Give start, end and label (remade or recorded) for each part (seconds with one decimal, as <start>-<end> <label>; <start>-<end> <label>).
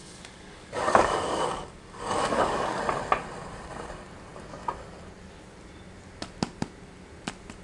0.0-2.8 remade; 2.8-7.6 recorded